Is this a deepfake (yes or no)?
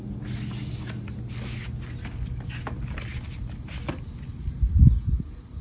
no